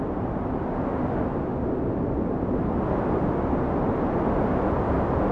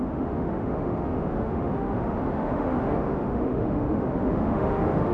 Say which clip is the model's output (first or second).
second